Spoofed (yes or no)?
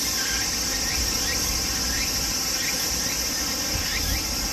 no